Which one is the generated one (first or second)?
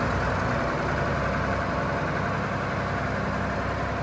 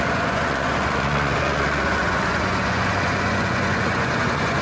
second